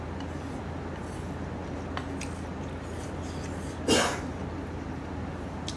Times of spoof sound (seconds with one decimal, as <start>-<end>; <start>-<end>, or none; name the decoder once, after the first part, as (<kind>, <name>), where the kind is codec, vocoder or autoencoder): none